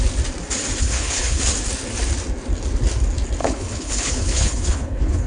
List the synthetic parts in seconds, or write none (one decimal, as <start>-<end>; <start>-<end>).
0.8-1.4; 3.4-5.3